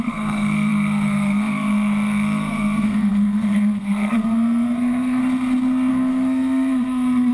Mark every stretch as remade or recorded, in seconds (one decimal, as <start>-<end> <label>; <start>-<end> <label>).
0.0-5.2 remade; 5.2-5.9 recorded; 5.9-7.3 remade